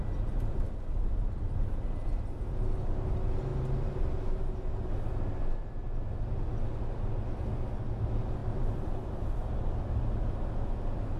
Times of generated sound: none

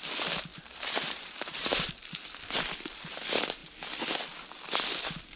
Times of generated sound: 0.5-1.9 (vocoder, BigVGAN v2)

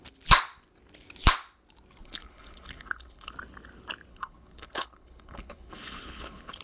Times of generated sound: 2.0-3.3 (codec, HILCodec); 4.1-6.6

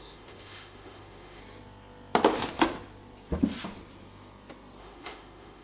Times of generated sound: 0.0-1.4 (autoencoder, DAC-VAE); 4.8-5.6